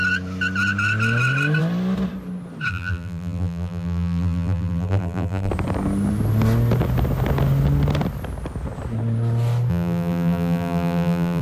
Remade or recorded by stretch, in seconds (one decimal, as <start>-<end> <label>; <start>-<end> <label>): 0.0-2.7 recorded; 2.7-5.5 remade; 5.5-9.7 recorded; 9.7-11.4 remade

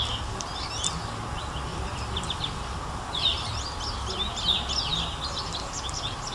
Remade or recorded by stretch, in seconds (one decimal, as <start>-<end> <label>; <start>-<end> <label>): 0.0-1.7 recorded; 1.7-3.6 remade; 3.6-6.3 recorded